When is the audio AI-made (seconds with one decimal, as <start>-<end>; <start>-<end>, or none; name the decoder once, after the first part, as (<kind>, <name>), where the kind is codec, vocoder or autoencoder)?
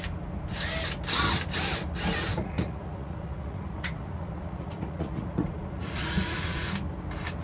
2.3-6.7 (vocoder, Vocos)